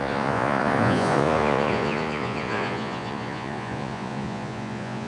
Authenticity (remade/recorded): remade